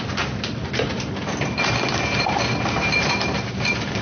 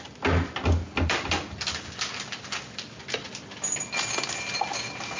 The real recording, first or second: second